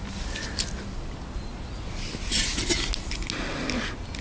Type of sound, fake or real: real